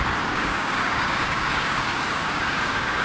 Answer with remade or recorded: remade